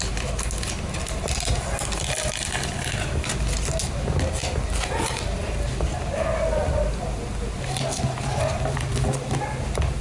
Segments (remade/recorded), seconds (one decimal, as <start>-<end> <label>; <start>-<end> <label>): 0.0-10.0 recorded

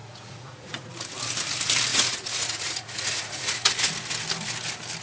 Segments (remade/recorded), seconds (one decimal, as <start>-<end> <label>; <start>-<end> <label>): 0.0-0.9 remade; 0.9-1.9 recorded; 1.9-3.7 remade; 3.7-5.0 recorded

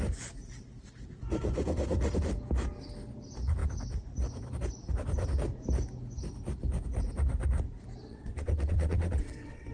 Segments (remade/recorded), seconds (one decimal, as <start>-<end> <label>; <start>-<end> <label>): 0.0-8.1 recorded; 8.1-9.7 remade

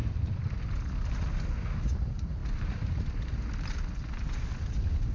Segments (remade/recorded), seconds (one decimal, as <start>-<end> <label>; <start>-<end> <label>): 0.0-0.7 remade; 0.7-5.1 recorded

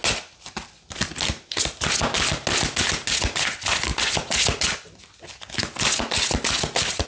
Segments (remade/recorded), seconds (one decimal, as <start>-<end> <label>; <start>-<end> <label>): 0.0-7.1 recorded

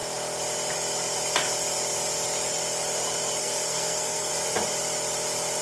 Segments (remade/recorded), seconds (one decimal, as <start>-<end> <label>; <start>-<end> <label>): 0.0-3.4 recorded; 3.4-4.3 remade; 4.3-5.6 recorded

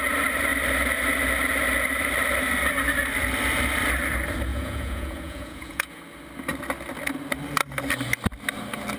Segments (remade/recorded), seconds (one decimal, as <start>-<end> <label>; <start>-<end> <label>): 0.0-4.5 recorded; 4.5-6.0 remade; 6.0-9.0 recorded